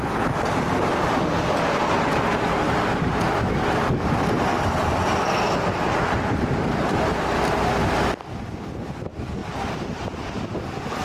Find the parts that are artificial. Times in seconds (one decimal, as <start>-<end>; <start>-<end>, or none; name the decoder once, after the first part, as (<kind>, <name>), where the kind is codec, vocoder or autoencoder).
none